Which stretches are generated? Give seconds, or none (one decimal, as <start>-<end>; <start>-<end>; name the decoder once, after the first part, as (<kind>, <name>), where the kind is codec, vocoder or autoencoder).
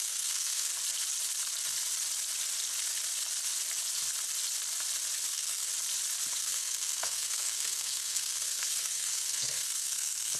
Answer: 0.0-0.7 (codec, SNAC); 5.3-5.7; 6.4-10.4